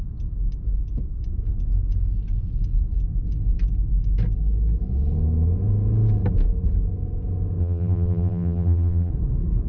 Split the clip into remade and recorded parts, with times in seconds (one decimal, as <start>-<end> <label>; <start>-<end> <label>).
0.0-7.6 recorded; 7.6-9.1 remade; 9.1-9.7 recorded